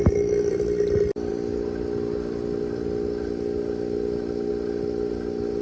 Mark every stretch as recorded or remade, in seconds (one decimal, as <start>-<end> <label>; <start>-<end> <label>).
0.0-5.6 recorded